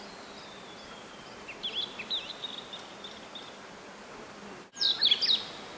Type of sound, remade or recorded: recorded